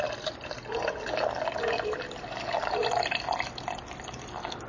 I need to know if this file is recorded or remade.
recorded